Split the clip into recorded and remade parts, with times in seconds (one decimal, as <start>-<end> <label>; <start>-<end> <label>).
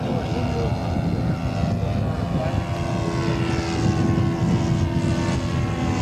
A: 0.0-6.0 recorded